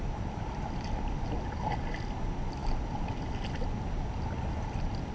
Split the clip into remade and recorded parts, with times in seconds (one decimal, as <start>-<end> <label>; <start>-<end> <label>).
0.0-5.1 recorded